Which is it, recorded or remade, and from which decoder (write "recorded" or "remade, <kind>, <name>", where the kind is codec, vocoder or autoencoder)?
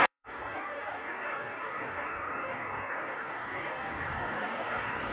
remade, codec, DAC